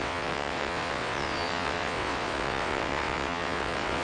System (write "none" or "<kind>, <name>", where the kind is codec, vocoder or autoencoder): vocoder, WaveNeXt